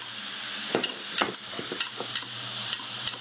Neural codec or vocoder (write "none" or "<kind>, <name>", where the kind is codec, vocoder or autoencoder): none